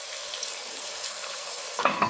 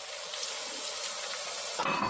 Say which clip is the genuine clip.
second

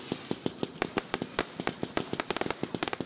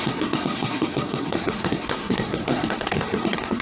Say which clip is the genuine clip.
first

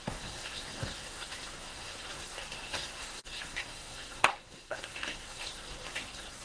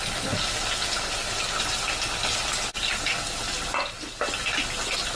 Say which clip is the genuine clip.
second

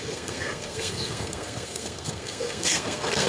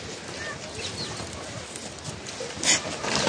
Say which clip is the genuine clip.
second